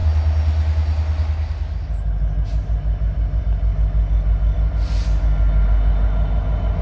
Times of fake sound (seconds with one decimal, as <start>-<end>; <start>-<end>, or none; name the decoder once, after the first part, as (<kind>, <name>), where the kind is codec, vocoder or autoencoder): none